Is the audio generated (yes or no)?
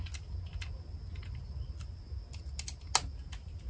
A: no